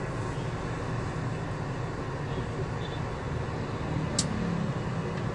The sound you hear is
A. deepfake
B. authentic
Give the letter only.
B